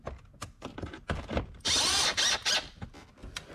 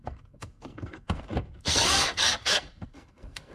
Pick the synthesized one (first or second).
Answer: second